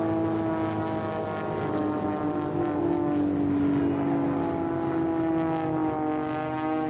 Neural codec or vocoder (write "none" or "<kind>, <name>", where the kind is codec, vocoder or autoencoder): none